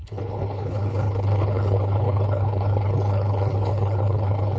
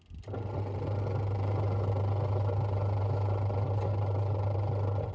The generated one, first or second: first